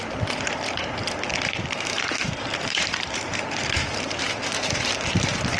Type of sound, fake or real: fake